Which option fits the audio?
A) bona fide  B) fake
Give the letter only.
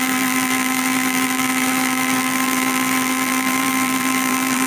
B